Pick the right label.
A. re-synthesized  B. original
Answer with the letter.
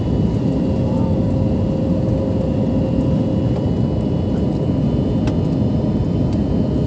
B